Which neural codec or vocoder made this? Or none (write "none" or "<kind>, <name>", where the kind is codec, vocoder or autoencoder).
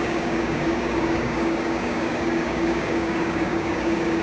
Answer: codec, DAC